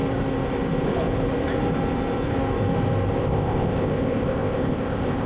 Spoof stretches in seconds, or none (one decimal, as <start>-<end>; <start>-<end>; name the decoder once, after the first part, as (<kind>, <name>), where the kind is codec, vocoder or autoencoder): 3.2-5.3 (codec, ZipCodec)